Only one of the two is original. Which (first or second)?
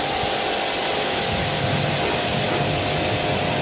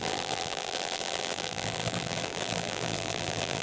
first